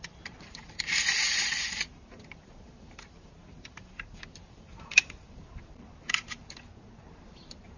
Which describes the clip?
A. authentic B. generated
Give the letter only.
B